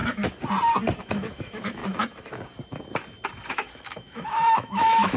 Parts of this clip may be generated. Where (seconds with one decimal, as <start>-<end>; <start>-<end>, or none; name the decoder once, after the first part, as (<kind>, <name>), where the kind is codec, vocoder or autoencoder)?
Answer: 1.0-1.8 (autoencoder, DAC-VAE); 3.5-5.2